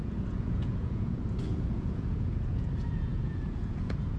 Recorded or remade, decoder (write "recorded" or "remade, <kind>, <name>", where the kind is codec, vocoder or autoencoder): remade, vocoder, Vocos